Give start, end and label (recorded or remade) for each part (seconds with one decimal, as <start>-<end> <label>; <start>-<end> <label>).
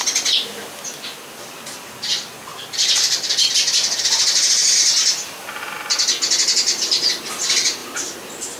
0.0-2.5 recorded; 2.5-4.0 remade; 4.0-7.8 recorded; 7.8-8.6 remade